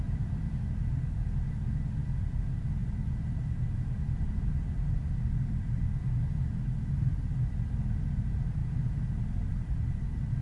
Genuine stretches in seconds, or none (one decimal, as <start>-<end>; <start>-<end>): 8.6-9.5

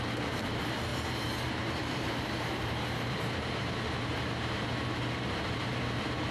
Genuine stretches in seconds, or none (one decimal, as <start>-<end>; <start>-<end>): 5.7-6.3